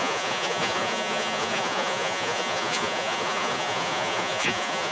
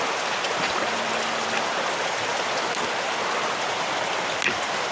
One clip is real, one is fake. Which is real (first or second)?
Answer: second